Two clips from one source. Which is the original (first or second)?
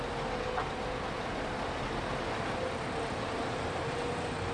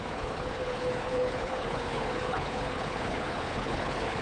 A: first